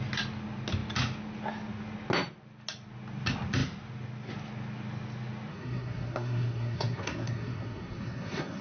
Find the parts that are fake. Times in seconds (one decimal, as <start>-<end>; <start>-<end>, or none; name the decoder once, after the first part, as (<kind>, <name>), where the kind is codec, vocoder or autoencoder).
5.5-8.6 (codec, SNAC)